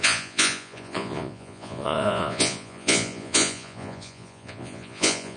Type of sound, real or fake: fake